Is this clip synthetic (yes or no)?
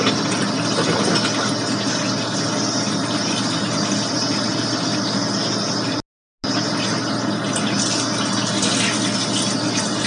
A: no